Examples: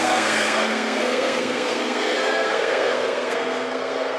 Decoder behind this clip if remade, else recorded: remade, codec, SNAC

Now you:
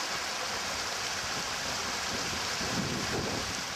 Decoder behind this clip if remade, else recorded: recorded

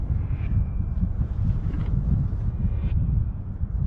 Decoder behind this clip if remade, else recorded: remade, vocoder, Vocos